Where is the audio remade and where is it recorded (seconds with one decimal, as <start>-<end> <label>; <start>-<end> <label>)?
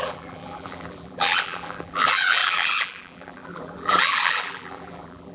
0.0-5.3 remade